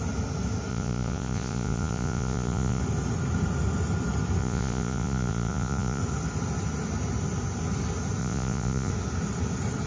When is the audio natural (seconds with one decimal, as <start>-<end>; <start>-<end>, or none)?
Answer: 0.0-0.7; 2.8-4.4; 6.0-8.2; 8.9-9.9